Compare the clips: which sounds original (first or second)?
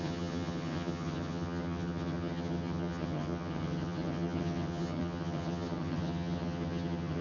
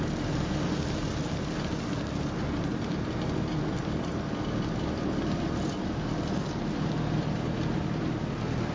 second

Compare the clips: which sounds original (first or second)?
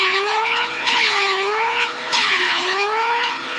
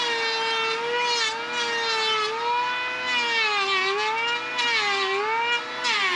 second